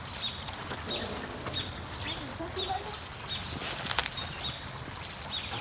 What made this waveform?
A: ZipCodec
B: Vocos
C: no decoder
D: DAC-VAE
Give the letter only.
C